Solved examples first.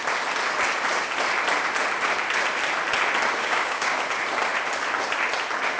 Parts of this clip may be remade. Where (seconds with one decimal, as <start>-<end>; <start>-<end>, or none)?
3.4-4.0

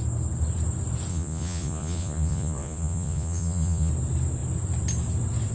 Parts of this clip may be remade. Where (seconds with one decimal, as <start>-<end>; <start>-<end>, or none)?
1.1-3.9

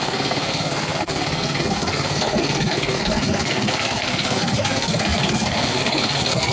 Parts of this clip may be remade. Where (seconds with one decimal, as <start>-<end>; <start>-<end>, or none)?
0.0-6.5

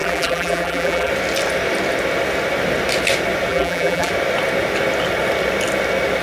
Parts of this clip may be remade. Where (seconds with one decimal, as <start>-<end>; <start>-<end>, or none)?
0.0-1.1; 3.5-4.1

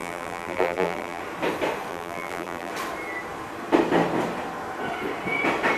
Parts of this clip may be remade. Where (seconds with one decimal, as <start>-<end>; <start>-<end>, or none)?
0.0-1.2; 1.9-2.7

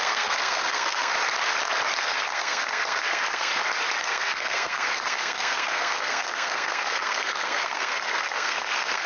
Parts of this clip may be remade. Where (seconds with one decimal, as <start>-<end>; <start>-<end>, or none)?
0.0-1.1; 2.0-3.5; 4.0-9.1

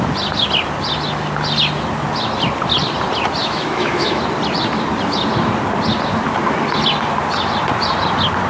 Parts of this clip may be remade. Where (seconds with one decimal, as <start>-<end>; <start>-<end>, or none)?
3.4-4.2